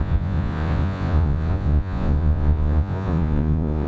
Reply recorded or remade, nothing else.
remade